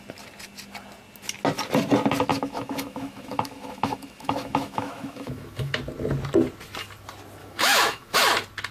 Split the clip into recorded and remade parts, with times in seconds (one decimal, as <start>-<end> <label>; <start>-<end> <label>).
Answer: 0.0-2.3 recorded; 2.3-5.8 remade; 5.8-7.4 recorded; 7.4-8.2 remade; 8.2-8.7 recorded